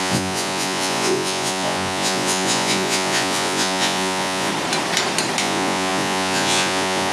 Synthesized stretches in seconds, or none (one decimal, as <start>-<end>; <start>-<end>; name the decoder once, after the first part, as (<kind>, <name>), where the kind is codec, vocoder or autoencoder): 0.0-4.5 (vocoder, Vocos); 5.4-7.1